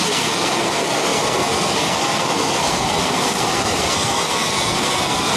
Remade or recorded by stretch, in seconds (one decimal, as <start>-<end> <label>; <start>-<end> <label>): 0.0-5.4 remade